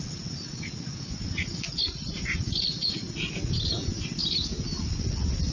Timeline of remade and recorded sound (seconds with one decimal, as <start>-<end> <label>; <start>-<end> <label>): 0.0-5.5 recorded